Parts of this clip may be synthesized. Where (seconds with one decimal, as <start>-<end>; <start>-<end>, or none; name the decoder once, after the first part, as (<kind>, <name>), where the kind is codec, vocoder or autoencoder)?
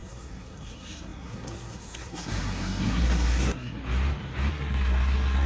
0.0-3.8 (codec, SNAC); 4.5-5.5